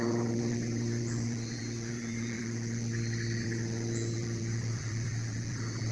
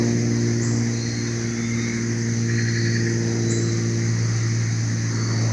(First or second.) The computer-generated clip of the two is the first